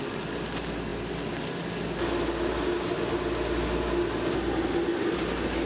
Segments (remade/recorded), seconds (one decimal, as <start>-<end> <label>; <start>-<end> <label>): 0.0-5.7 recorded